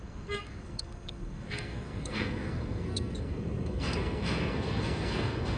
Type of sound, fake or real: fake